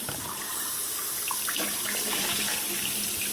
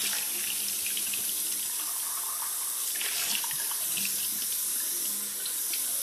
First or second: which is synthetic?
first